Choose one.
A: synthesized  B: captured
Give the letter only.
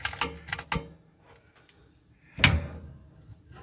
B